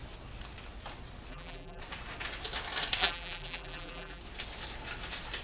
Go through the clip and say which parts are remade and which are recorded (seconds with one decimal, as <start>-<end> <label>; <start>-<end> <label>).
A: 0.0-1.3 recorded; 1.3-1.8 remade; 1.8-3.0 recorded; 3.0-4.2 remade; 4.2-5.4 recorded